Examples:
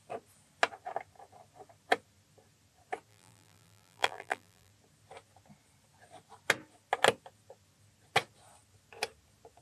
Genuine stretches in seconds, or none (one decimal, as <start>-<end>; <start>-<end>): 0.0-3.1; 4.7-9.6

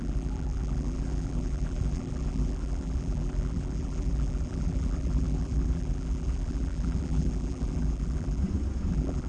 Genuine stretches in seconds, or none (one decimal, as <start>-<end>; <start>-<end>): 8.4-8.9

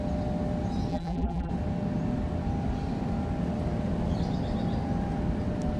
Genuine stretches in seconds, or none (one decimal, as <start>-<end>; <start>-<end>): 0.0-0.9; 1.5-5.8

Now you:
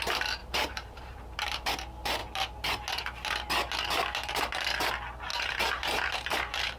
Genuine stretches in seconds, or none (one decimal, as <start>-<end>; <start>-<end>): 0.0-0.4; 1.7-5.3

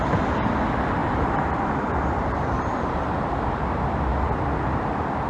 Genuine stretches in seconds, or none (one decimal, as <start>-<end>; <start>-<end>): 0.0-1.0; 2.5-4.1

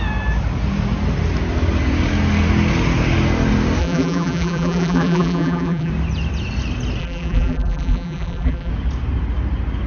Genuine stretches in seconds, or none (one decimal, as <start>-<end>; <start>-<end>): 0.0-3.8; 5.9-7.0; 8.7-9.9

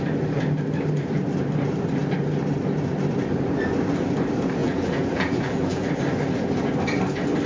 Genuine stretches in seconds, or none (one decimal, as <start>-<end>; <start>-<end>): 0.0-4.6; 6.0-7.5